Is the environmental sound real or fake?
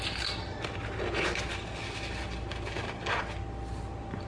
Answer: real